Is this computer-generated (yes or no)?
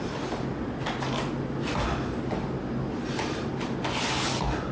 no